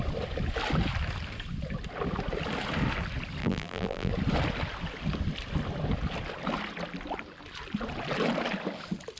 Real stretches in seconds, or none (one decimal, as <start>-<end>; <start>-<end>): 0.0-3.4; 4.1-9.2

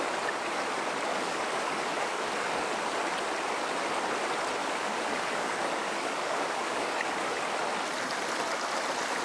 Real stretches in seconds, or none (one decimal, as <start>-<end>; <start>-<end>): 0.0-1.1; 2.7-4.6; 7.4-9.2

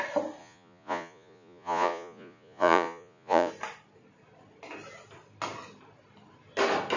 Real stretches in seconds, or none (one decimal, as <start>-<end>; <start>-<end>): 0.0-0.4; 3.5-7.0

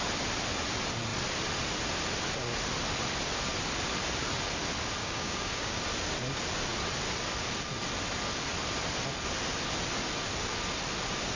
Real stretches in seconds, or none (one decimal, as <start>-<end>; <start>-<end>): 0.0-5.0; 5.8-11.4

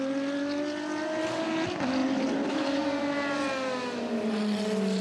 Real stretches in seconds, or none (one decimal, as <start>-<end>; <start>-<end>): 0.0-5.0

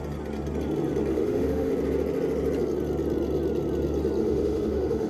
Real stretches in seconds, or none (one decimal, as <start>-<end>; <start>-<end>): 0.0-1.1; 1.7-4.2

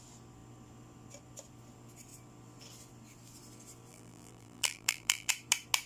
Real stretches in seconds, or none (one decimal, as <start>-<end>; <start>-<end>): 0.0-3.9; 5.3-5.9